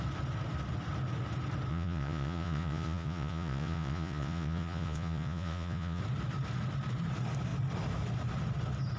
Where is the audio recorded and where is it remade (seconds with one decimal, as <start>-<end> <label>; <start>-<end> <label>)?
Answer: 0.0-1.7 recorded; 1.7-6.0 remade; 6.0-9.0 recorded